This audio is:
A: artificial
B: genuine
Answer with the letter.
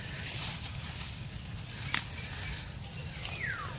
B